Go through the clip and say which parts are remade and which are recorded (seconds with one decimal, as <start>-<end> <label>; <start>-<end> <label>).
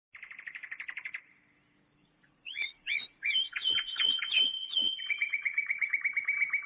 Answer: 0.0-2.0 recorded; 2.0-6.0 remade; 6.0-6.7 recorded